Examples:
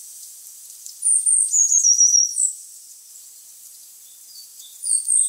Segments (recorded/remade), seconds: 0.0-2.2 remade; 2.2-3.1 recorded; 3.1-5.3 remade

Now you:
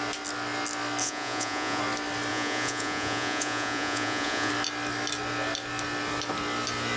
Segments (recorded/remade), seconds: 0.0-1.0 recorded; 1.0-1.8 remade; 1.8-2.3 recorded; 2.3-4.5 remade; 4.5-7.0 recorded

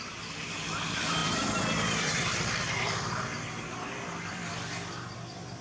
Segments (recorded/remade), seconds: 0.0-5.6 remade

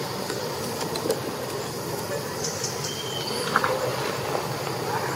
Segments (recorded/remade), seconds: 0.0-5.2 recorded

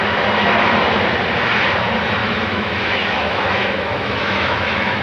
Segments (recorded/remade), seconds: 0.0-2.2 recorded; 2.2-5.0 remade